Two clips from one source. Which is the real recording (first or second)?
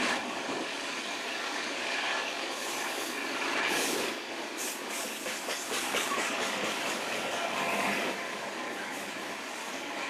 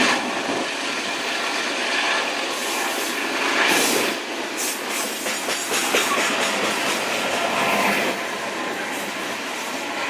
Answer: second